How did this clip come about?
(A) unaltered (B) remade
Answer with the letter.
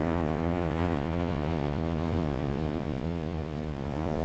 B